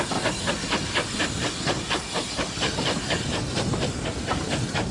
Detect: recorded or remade recorded